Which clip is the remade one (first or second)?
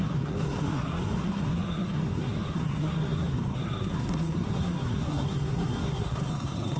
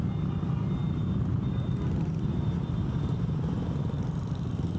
first